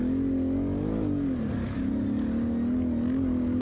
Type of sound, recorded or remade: recorded